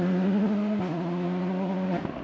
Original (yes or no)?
yes